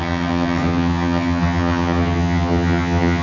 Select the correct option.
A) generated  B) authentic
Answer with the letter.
A